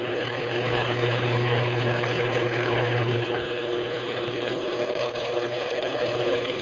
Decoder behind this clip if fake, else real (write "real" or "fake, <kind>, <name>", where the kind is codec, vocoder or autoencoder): fake, codec, HILCodec